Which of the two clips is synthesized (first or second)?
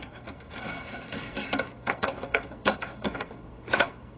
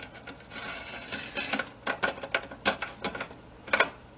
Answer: first